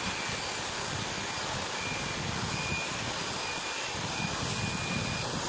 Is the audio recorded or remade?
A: recorded